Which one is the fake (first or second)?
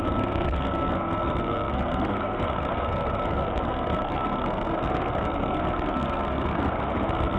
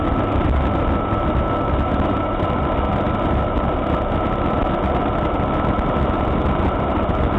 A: first